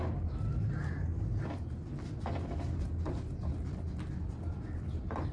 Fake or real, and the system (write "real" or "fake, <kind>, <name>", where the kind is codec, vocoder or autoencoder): real